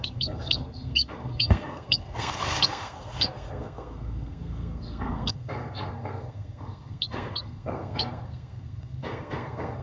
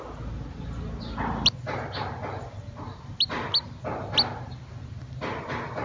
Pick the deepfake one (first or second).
first